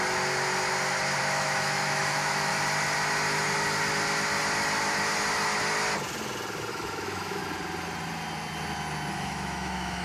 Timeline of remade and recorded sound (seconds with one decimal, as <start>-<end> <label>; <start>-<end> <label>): 0.0-1.2 recorded; 1.2-2.5 remade; 2.5-6.7 recorded; 6.7-7.4 remade; 7.4-9.1 recorded; 9.1-10.0 remade